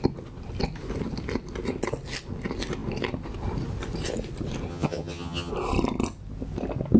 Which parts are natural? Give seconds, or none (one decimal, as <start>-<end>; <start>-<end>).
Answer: 0.0-4.7; 5.5-7.0